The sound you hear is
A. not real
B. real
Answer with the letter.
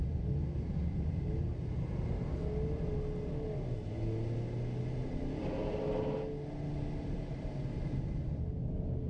B